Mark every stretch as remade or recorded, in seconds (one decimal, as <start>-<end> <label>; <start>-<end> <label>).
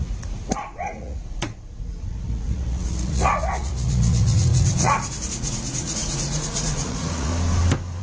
0.0-7.3 remade; 7.3-8.0 recorded